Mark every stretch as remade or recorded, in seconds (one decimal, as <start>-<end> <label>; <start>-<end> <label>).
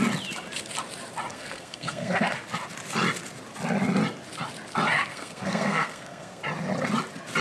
0.0-1.3 recorded; 1.3-2.3 remade; 2.3-5.1 recorded; 5.1-6.4 remade; 6.4-7.4 recorded